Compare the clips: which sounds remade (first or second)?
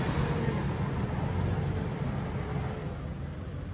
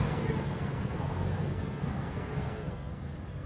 second